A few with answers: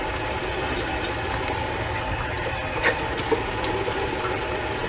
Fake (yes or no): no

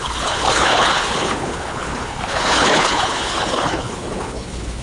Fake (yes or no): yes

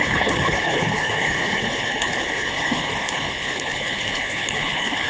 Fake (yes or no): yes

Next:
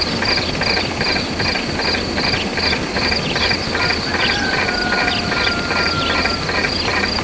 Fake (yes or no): no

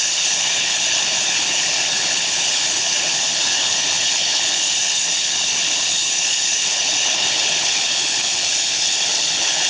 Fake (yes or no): yes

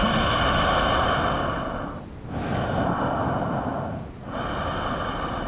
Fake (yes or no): no